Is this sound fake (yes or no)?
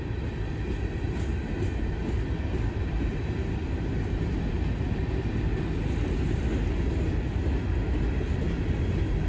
no